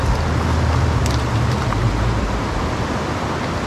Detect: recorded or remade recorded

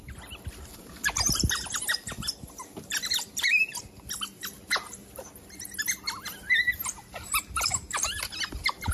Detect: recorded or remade recorded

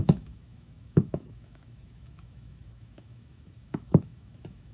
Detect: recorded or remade remade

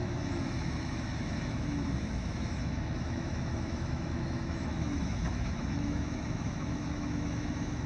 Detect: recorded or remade remade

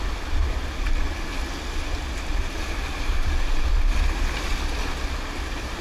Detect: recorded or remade recorded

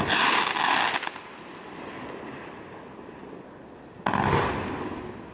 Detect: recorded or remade recorded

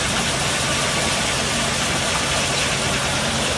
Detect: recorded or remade recorded